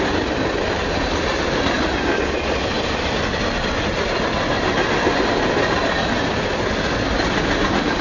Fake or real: real